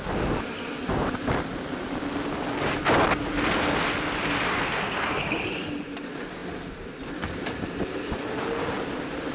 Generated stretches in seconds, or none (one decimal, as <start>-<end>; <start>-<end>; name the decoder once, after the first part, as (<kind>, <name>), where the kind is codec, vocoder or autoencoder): none